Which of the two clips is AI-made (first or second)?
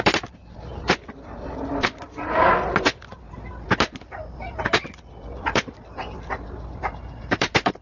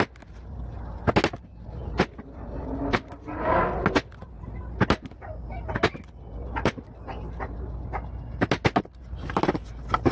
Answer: first